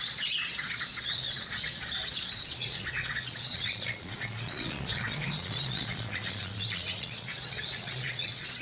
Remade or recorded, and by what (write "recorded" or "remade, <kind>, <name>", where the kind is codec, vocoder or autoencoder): remade, vocoder, Vocos